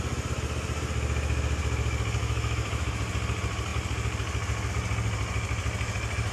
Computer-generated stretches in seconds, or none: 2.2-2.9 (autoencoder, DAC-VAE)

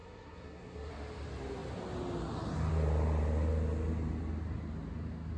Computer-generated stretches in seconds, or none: 0.0-0.9 (codec, SNAC)